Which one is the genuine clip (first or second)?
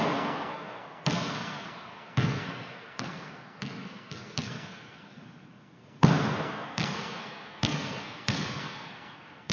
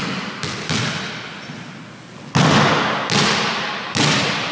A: second